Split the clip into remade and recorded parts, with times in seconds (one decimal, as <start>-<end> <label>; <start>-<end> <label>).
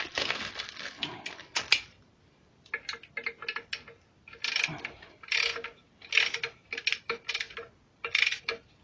0.0-8.8 recorded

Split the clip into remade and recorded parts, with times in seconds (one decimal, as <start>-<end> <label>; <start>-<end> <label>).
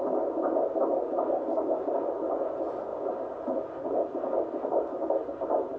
0.0-1.5 recorded; 1.5-2.0 remade; 2.0-5.8 recorded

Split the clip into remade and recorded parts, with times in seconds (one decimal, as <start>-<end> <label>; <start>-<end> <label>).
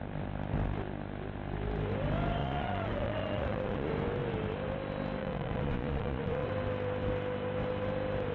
0.0-2.4 recorded; 2.4-3.9 remade; 3.9-5.2 recorded; 5.2-6.5 remade; 6.5-8.3 recorded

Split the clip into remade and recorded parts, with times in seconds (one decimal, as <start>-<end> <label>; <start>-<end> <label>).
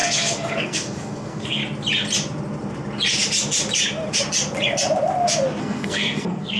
0.0-1.6 remade; 1.6-5.6 recorded; 5.6-6.6 remade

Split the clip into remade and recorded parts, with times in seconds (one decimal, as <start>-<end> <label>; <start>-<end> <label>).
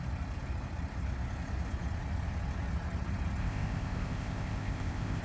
0.0-3.4 recorded; 3.4-5.2 remade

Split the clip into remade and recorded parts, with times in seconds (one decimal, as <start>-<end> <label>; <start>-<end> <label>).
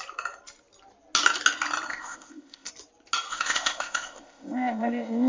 0.0-1.9 recorded; 1.9-2.7 remade; 2.7-3.3 recorded; 3.3-5.3 remade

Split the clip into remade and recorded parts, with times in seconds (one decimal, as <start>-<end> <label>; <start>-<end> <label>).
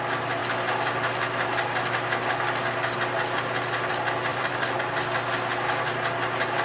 0.0-4.3 recorded; 4.3-4.8 remade; 4.8-6.6 recorded